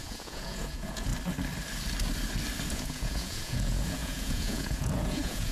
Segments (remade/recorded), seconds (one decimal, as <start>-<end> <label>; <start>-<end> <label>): 0.0-1.1 remade; 1.1-2.7 recorded; 2.7-5.5 remade